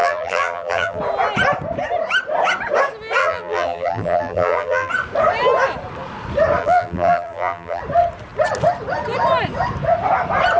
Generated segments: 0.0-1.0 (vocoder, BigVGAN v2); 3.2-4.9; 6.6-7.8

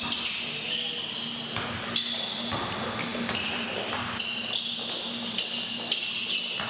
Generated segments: 3.1-4.4 (vocoder, BigVGAN v2)

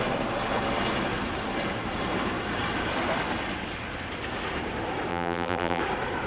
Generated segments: 5.1-5.8 (vocoder, BigVGAN v2)

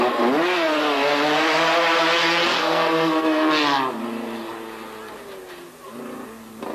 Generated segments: 2.6-3.5 (codec, SNAC)

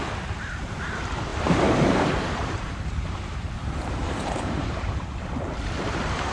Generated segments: 1.3-5.1 (vocoder, BigVGAN v2)

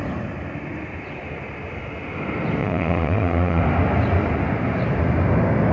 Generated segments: 2.6-3.6 (vocoder, Vocos)

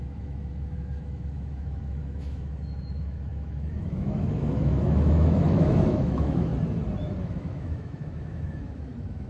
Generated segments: 0.0-6.5 (autoencoder, DAC-VAE); 7.2-9.3

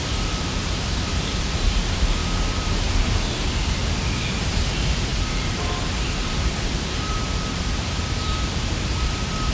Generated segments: 0.0-3.8 (vocoder, BigVGAN v2); 4.4-5.1; 5.9-9.5